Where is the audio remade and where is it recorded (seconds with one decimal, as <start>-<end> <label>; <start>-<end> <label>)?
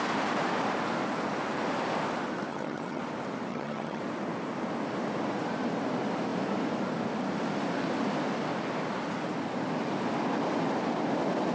0.0-2.5 recorded; 2.5-3.0 remade; 3.0-3.5 recorded; 3.5-4.0 remade; 4.0-11.5 recorded